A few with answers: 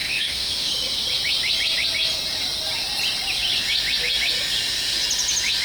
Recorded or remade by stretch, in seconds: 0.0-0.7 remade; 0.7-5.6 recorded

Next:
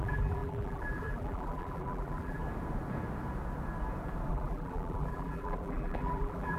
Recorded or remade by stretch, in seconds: 0.0-2.4 remade; 2.4-4.3 recorded; 4.3-6.6 remade

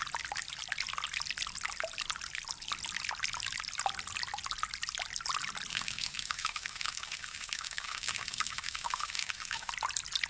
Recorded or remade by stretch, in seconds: 0.0-5.7 recorded; 5.7-9.7 remade; 9.7-10.3 recorded

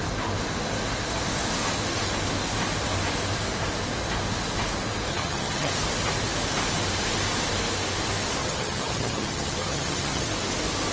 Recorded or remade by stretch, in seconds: 0.0-5.1 recorded; 5.1-5.7 remade; 5.7-8.4 recorded; 8.4-10.3 remade; 10.3-10.9 recorded

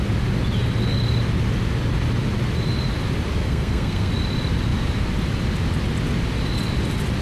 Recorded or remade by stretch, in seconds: 0.0-3.4 recorded; 3.4-4.1 remade; 4.1-7.2 recorded

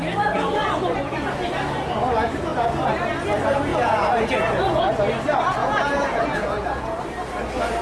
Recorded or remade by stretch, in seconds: 0.0-3.7 recorded; 3.7-4.9 remade; 4.9-5.6 recorded; 5.6-7.0 remade; 7.0-7.8 recorded